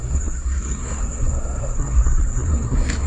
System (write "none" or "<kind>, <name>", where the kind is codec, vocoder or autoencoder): codec, SNAC